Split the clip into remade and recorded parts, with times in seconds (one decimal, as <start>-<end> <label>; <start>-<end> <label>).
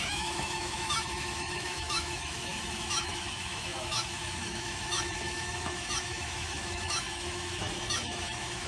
0.0-8.7 remade